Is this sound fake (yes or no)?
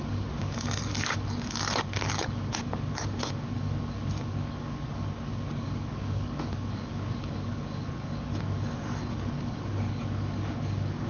yes